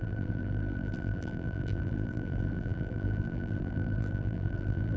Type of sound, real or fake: fake